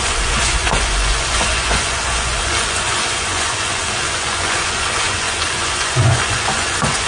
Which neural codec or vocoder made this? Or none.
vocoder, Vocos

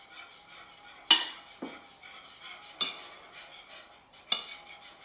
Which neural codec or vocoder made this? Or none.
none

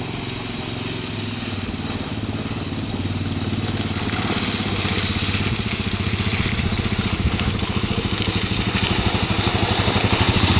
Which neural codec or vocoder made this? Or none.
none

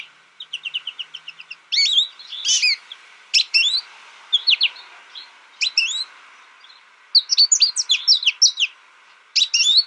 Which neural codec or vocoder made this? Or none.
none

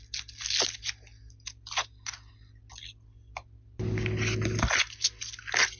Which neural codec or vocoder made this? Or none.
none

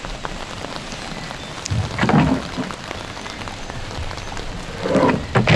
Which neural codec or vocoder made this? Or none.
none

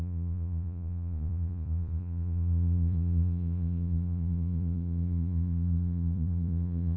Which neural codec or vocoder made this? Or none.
vocoder, Vocos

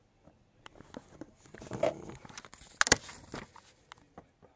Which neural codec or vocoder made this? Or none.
none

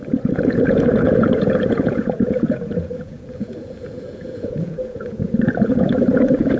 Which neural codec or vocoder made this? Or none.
vocoder, Vocos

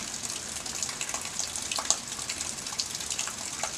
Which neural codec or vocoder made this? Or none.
none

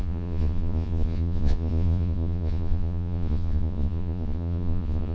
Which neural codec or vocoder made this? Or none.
vocoder, Vocos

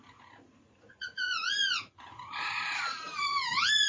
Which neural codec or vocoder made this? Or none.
vocoder, Vocos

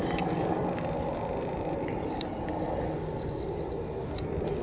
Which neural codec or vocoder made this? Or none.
none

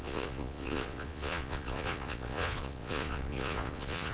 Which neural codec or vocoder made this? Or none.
vocoder, Vocos